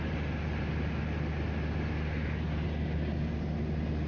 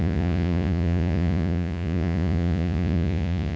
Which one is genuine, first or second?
first